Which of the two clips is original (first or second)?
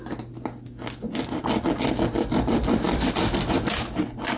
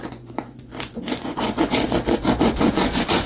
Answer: first